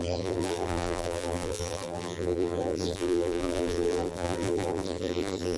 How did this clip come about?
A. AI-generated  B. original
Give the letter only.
A